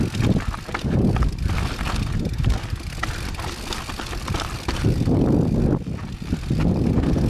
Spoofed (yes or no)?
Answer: no